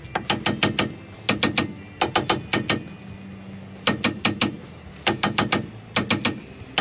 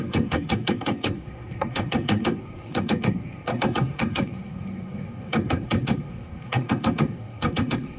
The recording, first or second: first